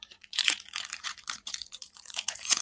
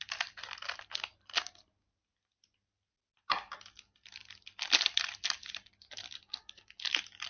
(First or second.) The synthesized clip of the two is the first